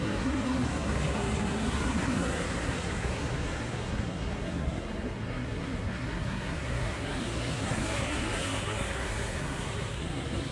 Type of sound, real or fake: fake